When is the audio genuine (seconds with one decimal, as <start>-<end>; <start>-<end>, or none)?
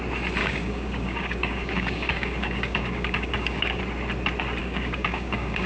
0.0-0.4; 3.8-4.6